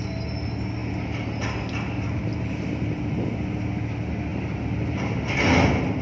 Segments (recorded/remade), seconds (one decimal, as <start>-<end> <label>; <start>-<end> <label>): 0.0-6.0 recorded